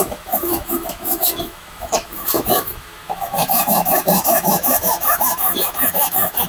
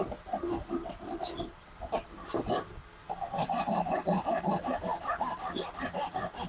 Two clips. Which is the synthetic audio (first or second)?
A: first